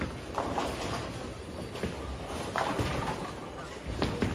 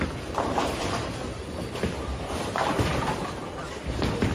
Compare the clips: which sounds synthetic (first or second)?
second